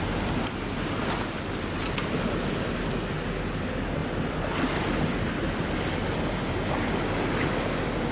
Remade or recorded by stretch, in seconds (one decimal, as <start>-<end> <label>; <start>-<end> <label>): 0.0-8.1 recorded